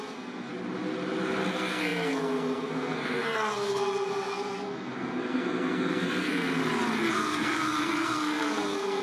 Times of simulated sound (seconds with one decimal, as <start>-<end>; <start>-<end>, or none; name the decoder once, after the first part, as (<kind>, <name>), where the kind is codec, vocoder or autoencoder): 0.0-0.5 (codec, SNAC); 1.5-6.6; 7.1-9.0